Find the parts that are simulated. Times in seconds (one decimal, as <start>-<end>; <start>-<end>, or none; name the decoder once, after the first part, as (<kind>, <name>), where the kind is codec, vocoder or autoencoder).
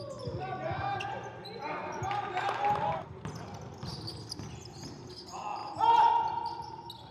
none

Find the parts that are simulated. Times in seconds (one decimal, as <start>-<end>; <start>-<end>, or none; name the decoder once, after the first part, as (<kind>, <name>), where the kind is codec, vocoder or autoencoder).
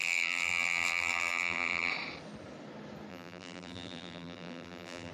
0.0-1.9 (vocoder, BigVGAN v2); 3.1-5.1